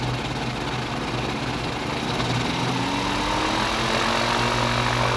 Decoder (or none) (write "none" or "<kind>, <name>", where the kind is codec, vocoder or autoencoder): none